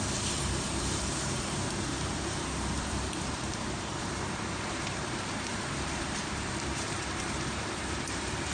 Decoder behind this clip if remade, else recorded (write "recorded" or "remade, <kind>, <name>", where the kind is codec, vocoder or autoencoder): remade, vocoder, BigVGAN v2